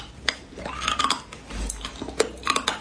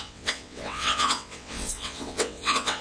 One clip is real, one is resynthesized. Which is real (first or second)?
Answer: first